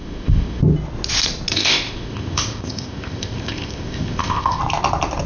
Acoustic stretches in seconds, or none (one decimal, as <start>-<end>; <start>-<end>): 0.6-1.5; 4.6-5.3

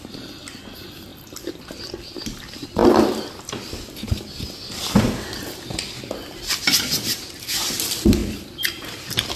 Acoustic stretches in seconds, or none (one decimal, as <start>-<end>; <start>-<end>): 0.0-8.2; 9.0-9.4